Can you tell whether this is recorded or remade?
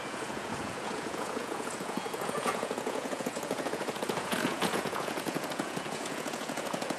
remade